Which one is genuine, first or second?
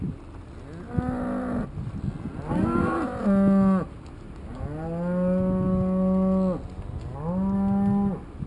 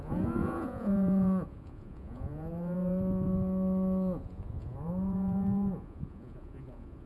first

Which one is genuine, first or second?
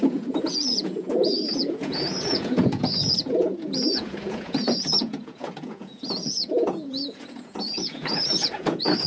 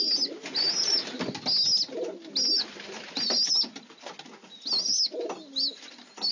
second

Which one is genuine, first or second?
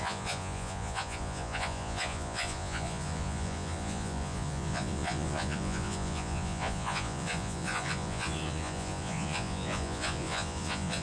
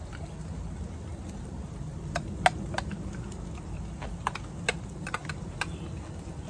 second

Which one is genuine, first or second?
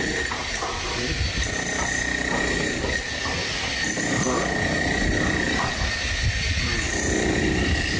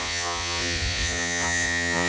first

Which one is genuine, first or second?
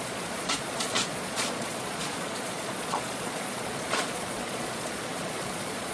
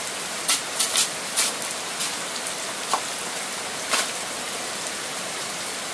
second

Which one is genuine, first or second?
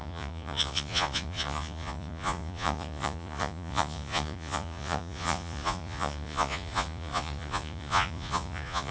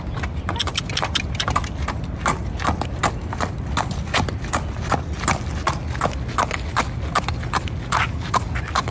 second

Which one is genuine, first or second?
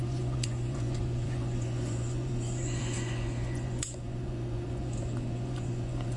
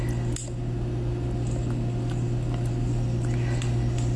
second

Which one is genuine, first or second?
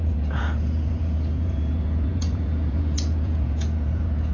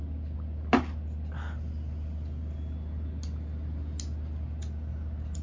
second